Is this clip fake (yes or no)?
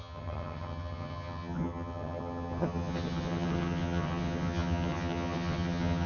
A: yes